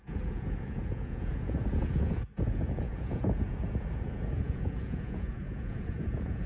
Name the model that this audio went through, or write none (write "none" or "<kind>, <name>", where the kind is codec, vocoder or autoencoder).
vocoder, Vocos